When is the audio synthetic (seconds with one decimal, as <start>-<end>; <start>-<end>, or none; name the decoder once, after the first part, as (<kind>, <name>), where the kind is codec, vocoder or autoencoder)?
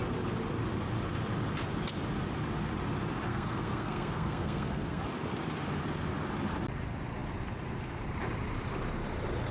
3.3-5.0 (codec, SNAC)